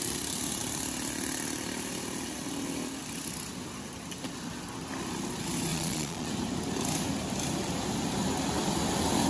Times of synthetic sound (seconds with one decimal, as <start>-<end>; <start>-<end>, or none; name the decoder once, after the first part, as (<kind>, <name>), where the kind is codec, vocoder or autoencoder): 5.7-6.3 (vocoder, Vocos)